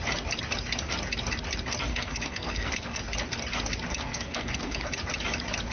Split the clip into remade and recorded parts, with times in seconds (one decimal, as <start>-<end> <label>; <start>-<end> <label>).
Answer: 0.0-1.9 recorded; 1.9-3.0 remade; 3.0-3.9 recorded; 3.9-4.9 remade; 4.9-5.7 recorded